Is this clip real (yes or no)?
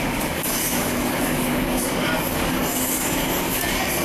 no